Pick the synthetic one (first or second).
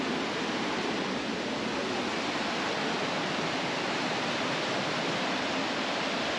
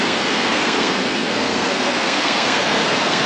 second